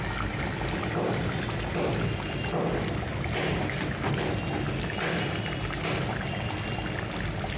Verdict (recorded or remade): recorded